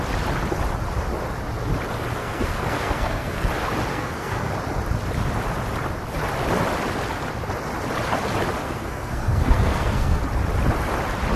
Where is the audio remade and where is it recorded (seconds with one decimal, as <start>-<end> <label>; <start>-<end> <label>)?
0.0-2.2 recorded; 2.2-3.5 remade; 3.5-3.9 recorded; 3.9-4.5 remade; 4.5-8.6 recorded; 8.6-10.2 remade; 10.2-11.4 recorded